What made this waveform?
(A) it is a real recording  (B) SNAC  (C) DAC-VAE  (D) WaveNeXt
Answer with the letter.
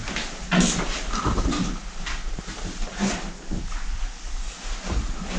A